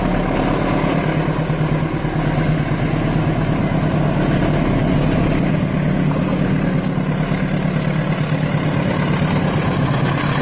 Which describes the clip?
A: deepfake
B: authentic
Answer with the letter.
B